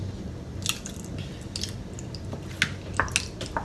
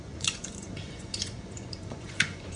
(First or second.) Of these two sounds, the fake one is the second